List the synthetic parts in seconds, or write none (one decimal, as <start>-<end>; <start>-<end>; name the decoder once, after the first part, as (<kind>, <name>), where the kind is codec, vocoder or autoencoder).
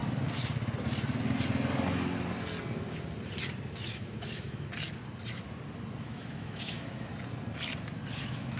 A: 3.9-4.7 (autoencoder, DAC-VAE); 6.0-7.1; 8.2-8.6